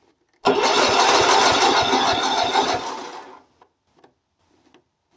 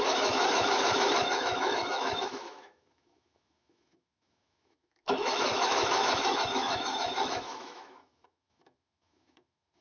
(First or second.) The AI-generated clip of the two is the second